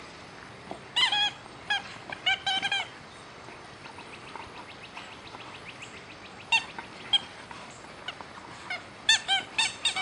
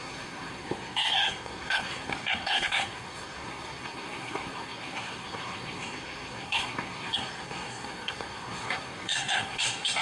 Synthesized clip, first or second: second